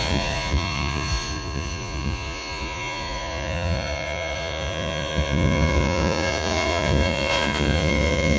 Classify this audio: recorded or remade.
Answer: remade